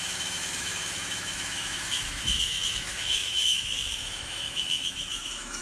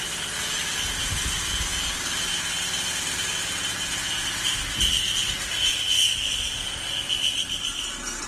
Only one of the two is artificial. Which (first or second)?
first